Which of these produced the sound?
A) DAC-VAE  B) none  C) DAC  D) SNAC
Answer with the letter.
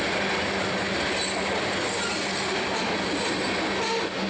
B